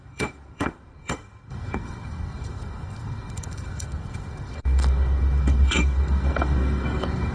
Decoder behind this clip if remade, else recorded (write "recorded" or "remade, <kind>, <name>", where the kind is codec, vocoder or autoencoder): remade, codec, SNAC